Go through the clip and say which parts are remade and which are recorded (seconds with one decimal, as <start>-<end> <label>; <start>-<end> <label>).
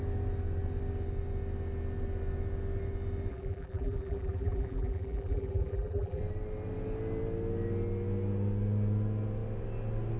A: 0.0-3.3 recorded; 3.3-6.2 remade; 6.2-10.2 recorded